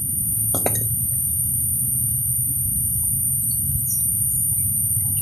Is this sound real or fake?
real